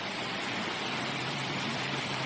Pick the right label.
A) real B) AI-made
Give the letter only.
B